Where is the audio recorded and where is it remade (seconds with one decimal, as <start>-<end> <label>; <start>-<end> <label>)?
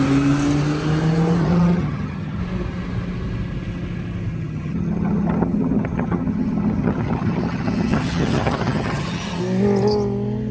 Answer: 0.0-1.4 recorded; 1.4-2.4 remade; 2.4-4.3 recorded; 4.3-9.4 remade; 9.4-10.5 recorded